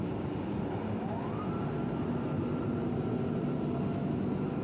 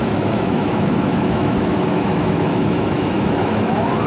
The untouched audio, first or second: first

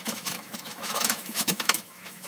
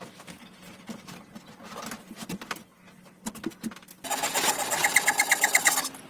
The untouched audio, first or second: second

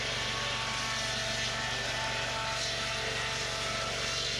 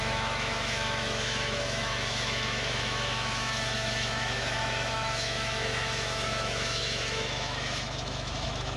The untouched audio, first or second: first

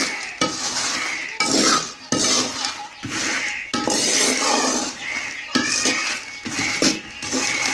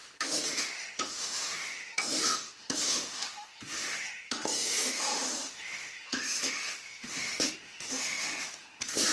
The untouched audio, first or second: first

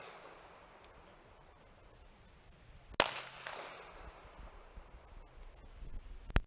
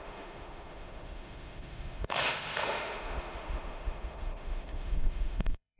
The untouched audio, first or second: first